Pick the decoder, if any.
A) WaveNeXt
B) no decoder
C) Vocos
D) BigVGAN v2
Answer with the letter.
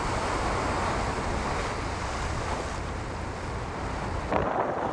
B